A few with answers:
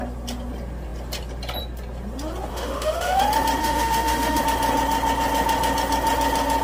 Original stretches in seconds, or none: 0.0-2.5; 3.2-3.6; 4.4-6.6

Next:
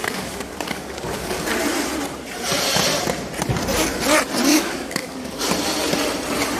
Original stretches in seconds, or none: 1.5-4.5; 5.4-6.6